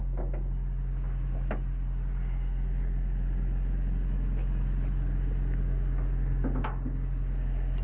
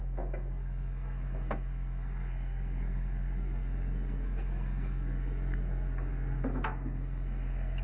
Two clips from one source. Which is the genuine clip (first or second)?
first